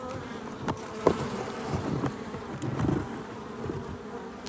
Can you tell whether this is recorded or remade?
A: remade